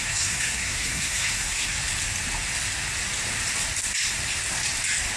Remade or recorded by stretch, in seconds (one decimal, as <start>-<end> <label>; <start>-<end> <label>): 0.0-1.8 remade; 1.8-5.2 recorded